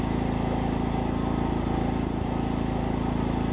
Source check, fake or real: real